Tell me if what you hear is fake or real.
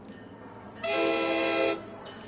real